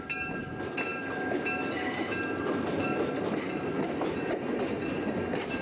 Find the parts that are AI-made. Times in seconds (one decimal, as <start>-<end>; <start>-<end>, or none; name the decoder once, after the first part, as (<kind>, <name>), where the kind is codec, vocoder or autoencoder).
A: none